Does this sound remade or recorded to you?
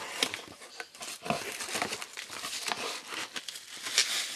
recorded